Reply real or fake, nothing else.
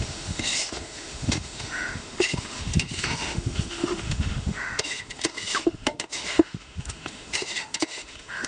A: fake